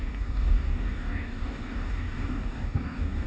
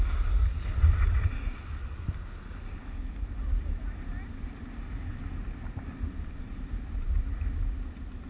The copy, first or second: first